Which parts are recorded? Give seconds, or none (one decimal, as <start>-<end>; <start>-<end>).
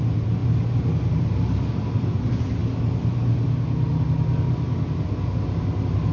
0.0-6.1